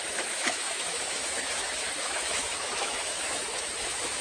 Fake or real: fake